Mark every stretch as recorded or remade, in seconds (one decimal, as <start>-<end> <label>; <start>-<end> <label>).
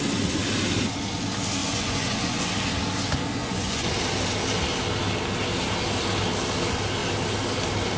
0.0-1.6 recorded; 1.6-2.4 remade; 2.4-3.4 recorded; 3.4-3.9 remade; 3.9-8.0 recorded